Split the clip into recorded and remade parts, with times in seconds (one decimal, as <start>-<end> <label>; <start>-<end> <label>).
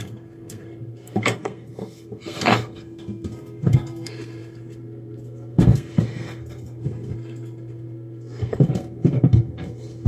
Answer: 0.0-10.1 remade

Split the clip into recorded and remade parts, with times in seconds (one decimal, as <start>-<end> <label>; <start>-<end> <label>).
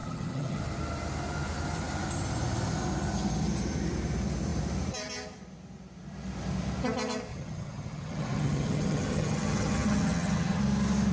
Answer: 0.0-0.6 remade; 0.6-7.3 recorded; 7.3-10.6 remade; 10.6-11.1 recorded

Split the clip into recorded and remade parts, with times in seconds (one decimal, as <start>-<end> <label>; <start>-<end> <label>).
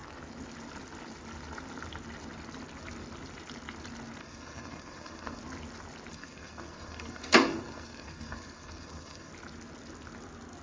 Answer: 0.0-4.2 recorded; 4.2-5.4 remade; 5.4-6.1 recorded; 6.1-9.3 remade; 9.3-10.6 recorded